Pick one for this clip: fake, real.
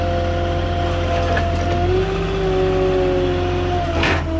real